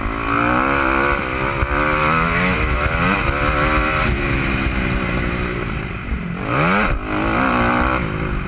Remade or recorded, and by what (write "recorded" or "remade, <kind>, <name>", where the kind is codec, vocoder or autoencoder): recorded